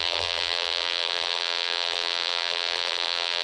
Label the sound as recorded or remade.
remade